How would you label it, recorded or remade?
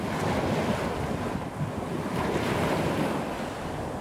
recorded